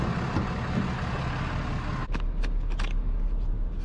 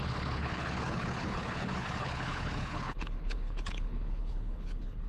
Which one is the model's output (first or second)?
second